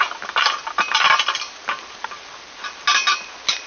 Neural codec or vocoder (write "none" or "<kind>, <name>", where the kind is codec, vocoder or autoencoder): none